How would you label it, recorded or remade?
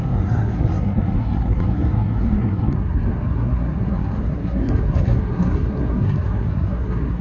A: remade